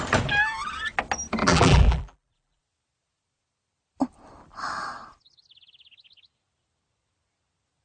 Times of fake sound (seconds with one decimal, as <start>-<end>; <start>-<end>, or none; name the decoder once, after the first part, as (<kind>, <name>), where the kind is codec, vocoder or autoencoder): 1.4-2.6 (vocoder, BigVGAN v2)